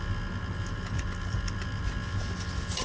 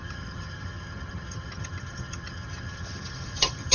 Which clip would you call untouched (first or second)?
first